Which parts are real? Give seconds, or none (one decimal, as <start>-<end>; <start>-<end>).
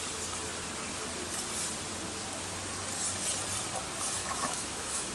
0.0-4.2